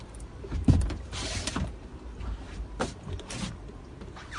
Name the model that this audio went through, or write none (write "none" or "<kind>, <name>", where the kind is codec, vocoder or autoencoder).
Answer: vocoder, BigVGAN v2